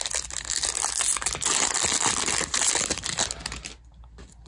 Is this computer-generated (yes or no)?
no